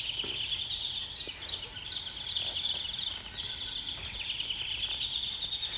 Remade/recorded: recorded